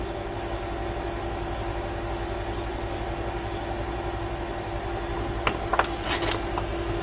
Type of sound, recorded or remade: recorded